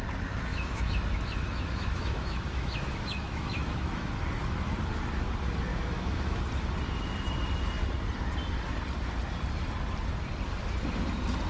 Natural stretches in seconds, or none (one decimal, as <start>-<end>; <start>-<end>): 0.0-0.5; 4.1-5.7; 6.4-11.5